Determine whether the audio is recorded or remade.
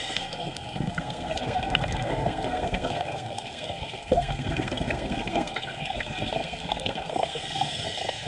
remade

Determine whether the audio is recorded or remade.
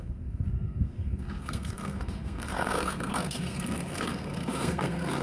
remade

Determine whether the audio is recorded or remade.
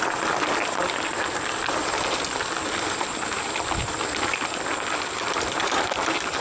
recorded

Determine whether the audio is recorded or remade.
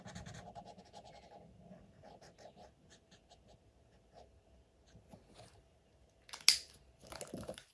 recorded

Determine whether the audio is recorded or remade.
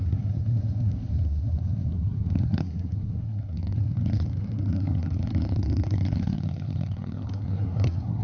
remade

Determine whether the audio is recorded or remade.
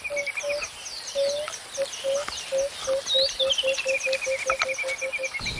recorded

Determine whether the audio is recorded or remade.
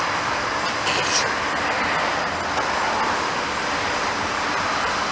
recorded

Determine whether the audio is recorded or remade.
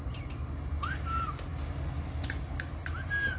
recorded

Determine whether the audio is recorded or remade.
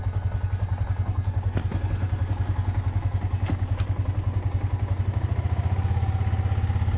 recorded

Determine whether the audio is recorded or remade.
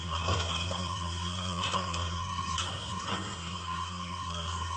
remade